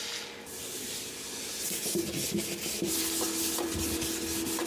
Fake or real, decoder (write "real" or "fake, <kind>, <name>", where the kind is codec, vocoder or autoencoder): real